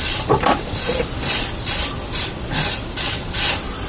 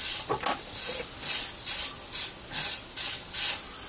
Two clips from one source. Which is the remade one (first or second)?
first